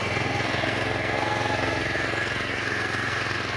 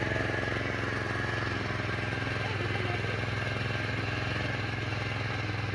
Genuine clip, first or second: second